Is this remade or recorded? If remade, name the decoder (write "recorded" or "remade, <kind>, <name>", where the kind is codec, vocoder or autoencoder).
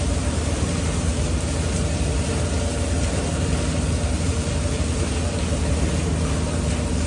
remade, vocoder, BigVGAN v2